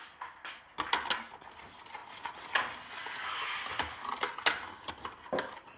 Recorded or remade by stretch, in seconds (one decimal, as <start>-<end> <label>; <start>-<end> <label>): 0.0-5.8 recorded